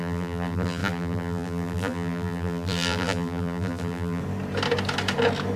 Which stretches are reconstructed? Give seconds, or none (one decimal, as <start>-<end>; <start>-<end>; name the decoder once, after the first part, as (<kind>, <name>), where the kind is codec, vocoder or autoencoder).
0.0-4.2 (vocoder, BigVGAN v2)